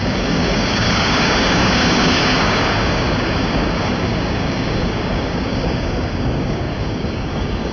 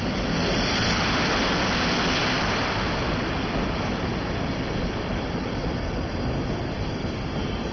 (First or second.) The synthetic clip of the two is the first